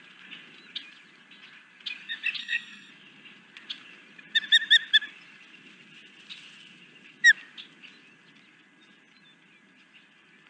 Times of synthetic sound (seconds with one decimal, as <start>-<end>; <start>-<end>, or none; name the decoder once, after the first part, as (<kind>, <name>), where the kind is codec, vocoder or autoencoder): 2.4-2.9 (codec, SNAC)